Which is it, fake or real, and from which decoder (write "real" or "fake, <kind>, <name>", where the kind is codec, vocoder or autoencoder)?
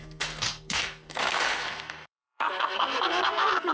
fake, codec, SNAC